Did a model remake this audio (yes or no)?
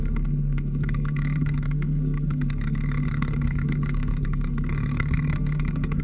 yes